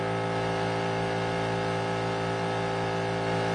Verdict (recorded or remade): recorded